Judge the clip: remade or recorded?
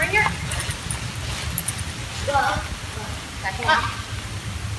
recorded